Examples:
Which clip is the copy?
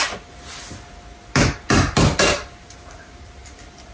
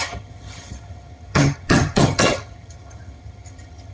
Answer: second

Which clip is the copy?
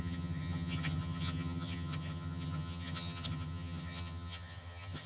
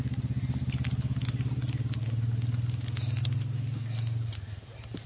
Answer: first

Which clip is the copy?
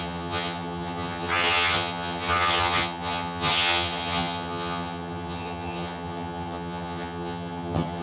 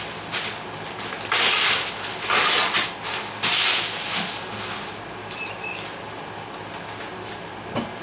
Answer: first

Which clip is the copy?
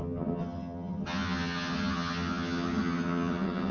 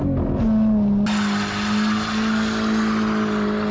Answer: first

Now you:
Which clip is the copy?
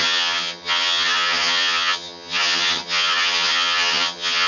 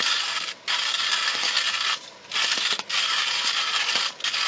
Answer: first